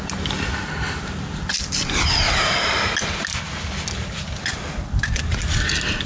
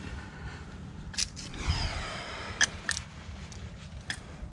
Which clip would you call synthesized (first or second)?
second